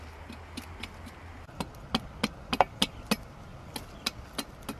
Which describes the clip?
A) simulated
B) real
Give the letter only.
B